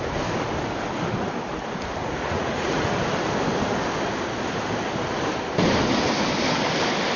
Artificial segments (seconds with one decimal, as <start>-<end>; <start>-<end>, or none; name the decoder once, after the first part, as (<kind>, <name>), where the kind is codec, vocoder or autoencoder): 2.0-2.9 (vocoder, Vocos)